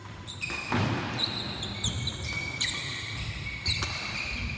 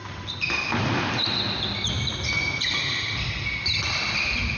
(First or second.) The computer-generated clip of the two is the first